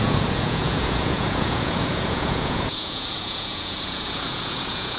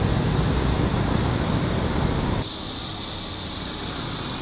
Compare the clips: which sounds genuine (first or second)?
second